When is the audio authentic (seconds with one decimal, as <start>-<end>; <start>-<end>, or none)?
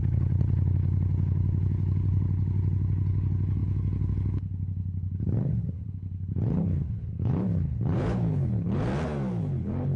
8.9-9.4